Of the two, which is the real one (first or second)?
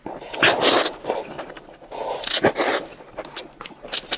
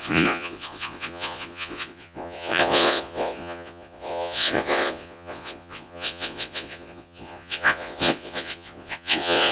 first